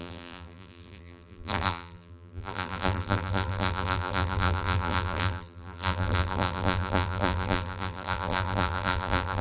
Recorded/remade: remade